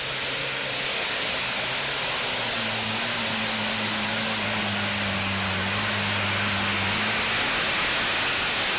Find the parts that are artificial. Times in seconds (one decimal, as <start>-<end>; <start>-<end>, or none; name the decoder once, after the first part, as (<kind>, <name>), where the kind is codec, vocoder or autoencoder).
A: 0.4-1.3 (codec, DAC)